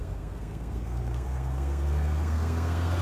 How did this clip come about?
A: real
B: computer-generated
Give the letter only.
B